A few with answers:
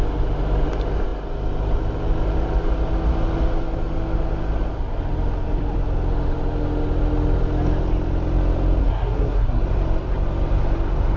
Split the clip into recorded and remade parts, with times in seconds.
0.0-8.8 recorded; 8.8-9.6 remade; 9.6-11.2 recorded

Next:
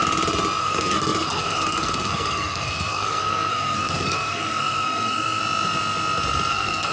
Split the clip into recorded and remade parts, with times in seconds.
0.0-0.6 recorded; 0.6-5.4 remade; 5.4-6.5 recorded; 6.5-6.9 remade

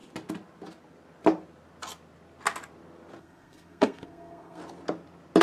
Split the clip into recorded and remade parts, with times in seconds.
0.0-3.2 recorded; 3.2-4.6 remade; 4.6-5.4 recorded

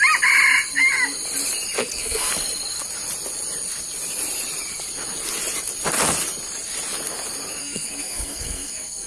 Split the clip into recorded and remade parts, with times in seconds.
0.0-1.8 recorded; 1.8-2.3 remade; 2.3-7.6 recorded; 7.6-9.1 remade

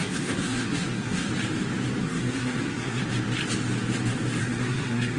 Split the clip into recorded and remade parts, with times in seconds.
0.0-1.3 remade; 1.3-2.0 recorded; 2.0-3.0 remade; 3.0-4.4 recorded; 4.4-5.2 remade

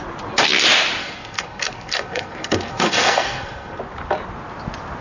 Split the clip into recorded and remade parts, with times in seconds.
0.0-1.0 recorded; 1.0-3.8 remade; 3.8-5.0 recorded